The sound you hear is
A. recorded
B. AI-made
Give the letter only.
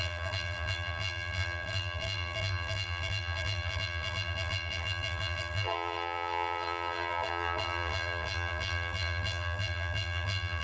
B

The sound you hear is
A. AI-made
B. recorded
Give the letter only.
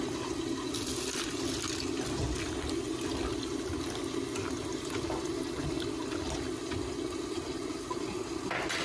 B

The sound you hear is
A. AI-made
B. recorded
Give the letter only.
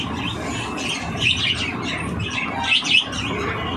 B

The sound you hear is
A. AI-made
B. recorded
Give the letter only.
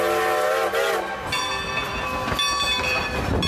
B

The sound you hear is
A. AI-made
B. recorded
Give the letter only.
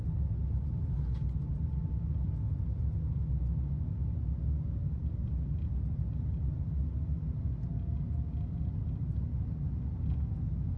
B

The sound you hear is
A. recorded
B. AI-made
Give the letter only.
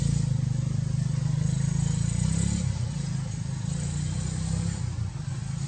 A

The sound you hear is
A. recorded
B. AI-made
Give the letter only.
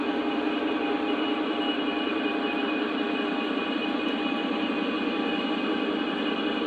B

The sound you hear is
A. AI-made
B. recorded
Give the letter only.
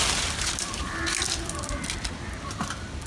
B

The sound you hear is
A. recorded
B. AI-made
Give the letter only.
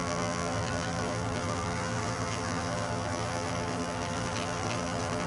B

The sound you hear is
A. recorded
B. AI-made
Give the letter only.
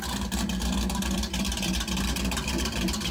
B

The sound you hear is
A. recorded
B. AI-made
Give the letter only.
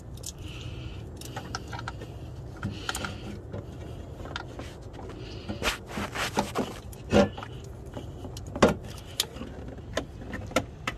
A